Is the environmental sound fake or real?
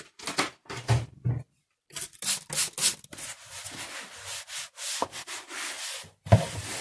real